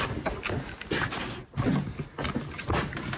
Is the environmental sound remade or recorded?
recorded